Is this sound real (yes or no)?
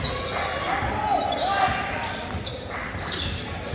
yes